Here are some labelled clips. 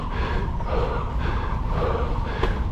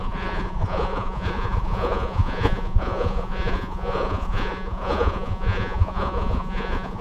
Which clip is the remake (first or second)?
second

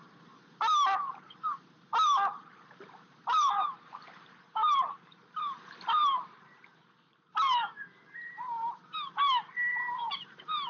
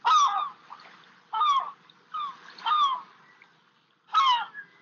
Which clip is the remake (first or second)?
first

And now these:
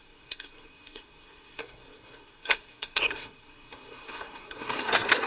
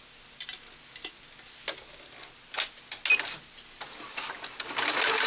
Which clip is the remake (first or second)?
first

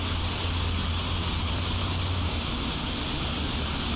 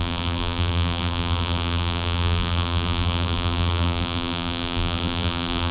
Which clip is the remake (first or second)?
second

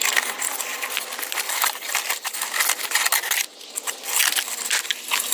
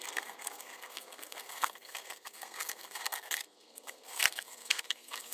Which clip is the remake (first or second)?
second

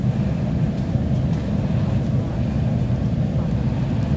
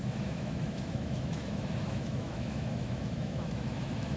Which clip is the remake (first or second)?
second